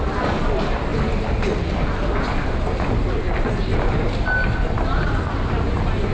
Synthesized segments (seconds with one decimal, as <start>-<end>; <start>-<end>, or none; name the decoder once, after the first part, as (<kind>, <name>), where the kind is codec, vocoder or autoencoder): none